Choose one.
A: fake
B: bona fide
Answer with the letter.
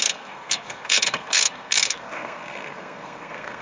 A